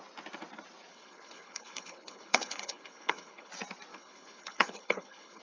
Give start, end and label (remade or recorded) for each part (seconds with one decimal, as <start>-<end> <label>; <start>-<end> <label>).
0.0-0.9 recorded; 0.9-3.5 remade; 3.5-3.9 recorded; 3.9-5.4 remade

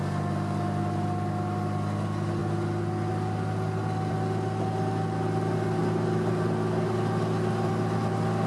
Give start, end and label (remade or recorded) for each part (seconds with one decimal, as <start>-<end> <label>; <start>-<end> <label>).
0.0-8.5 recorded

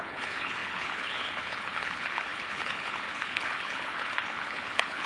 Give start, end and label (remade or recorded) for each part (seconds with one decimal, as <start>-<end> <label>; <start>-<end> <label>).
0.0-5.1 remade

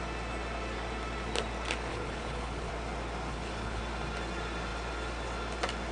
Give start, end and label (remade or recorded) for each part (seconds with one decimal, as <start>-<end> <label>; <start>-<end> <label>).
0.0-1.9 recorded; 1.9-2.7 remade; 2.7-3.3 recorded; 3.3-3.8 remade; 3.8-5.9 recorded

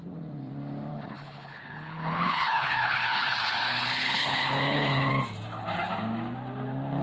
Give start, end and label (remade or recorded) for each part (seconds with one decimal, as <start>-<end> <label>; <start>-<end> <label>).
0.0-0.9 recorded; 0.9-5.1 remade; 5.1-7.0 recorded

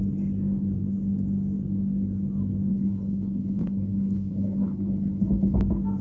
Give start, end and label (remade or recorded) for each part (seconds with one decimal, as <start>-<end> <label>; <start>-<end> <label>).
0.0-2.7 recorded; 2.7-5.6 remade; 5.6-6.0 recorded

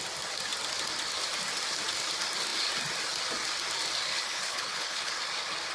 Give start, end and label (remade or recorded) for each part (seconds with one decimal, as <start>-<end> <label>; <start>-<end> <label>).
0.0-4.1 recorded; 4.1-5.1 remade; 5.1-5.7 recorded